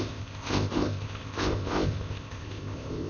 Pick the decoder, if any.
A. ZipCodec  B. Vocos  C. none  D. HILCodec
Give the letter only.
A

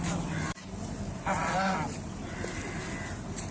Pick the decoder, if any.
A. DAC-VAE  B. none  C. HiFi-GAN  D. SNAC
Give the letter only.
B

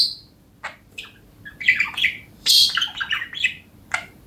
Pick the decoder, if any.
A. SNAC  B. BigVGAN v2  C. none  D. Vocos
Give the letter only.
B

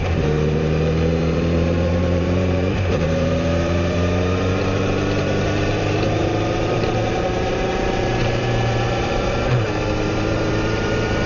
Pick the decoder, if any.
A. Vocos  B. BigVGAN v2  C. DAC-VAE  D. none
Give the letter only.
B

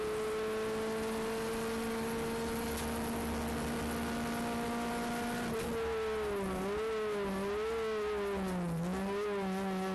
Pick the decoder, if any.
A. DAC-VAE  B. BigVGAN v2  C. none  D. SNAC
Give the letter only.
C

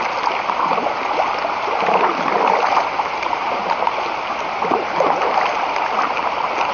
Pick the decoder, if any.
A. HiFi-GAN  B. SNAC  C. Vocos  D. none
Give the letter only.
D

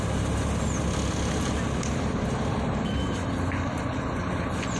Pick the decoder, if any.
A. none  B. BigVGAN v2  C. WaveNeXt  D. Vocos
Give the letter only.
A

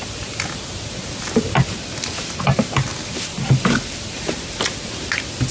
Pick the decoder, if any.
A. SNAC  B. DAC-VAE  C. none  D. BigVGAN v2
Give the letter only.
C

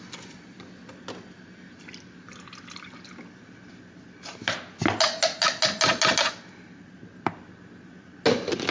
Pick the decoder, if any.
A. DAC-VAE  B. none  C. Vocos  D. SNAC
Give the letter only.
B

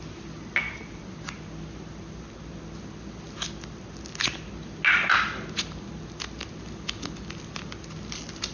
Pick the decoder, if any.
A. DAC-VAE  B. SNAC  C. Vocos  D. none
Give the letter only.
D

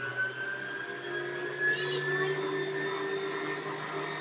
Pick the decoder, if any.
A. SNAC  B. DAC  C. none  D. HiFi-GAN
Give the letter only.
C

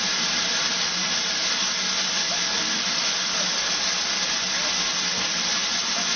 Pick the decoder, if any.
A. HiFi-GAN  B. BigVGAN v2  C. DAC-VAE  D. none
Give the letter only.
D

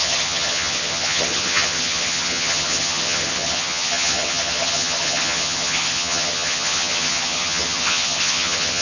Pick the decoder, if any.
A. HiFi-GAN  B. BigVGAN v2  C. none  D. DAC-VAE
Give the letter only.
A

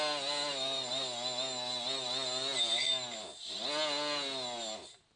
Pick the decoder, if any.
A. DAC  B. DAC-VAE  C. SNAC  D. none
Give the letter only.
D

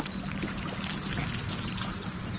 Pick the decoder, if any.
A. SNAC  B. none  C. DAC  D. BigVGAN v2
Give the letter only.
B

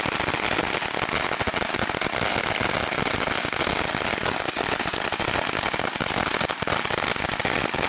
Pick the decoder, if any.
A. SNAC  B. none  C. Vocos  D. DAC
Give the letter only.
B